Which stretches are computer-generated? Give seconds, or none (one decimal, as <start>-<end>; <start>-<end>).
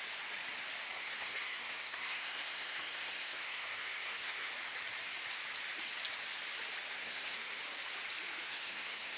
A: 0.9-4.5; 6.9-7.6; 8.5-9.2